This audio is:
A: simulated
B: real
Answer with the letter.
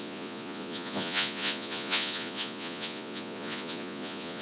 A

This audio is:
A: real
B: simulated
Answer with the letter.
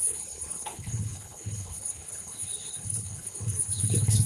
B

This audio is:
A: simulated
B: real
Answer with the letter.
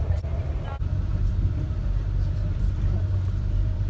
A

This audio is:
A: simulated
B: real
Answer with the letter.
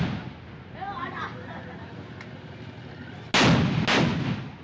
B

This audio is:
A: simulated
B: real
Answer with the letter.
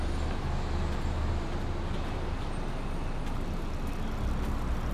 B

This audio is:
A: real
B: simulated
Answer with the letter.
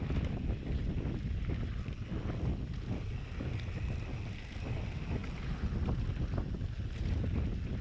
A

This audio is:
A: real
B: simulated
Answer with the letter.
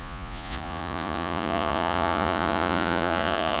B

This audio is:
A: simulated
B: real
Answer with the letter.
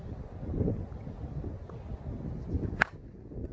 B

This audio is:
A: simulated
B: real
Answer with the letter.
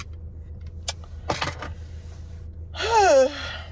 B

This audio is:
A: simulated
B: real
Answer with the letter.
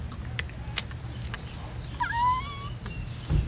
B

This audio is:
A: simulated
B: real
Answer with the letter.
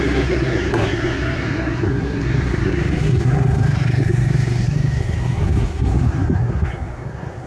A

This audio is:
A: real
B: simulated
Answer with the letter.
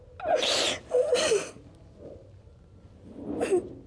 A